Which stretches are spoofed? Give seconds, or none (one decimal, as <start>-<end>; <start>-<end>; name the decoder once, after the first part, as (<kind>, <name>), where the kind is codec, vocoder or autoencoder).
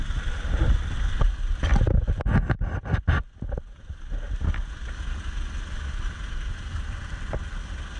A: none